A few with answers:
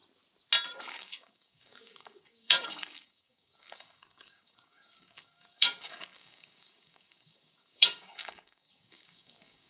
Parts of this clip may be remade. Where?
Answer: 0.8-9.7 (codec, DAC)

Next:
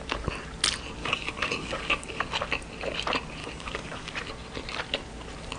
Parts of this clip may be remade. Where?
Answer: 1.0-2.2 (codec, DAC); 3.4-4.3

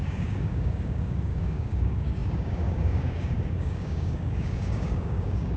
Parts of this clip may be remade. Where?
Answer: 0.0-5.6 (codec, DAC)

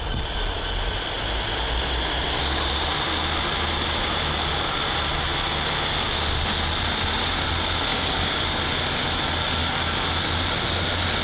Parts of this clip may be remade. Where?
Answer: 7.9-8.6 (codec, DAC); 9.6-10.2

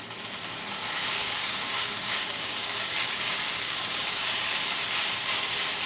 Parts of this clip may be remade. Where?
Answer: 1.2-4.5 (codec, DAC)

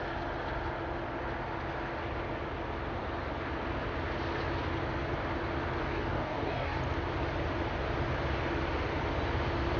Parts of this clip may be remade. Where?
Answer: 5.8-6.8 (codec, DAC)

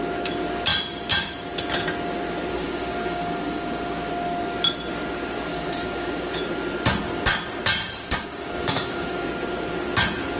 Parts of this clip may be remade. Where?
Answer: 2.5-4.1 (codec, DAC); 5.5-6.3; 7.8-9.3

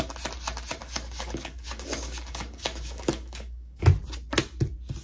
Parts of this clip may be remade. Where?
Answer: 0.8-3.8 (codec, DAC)